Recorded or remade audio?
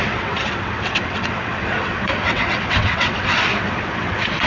remade